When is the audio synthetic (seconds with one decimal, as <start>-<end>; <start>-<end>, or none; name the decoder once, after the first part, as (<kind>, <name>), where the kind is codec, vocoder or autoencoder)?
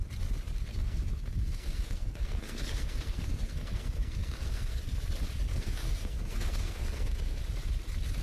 0.7-4.8 (codec, SNAC); 5.5-7.4